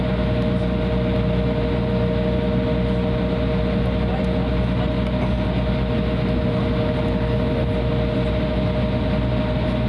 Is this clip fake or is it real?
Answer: real